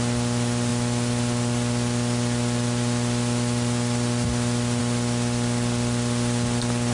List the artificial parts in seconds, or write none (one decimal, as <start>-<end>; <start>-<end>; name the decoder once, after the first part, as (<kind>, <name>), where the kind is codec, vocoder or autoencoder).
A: none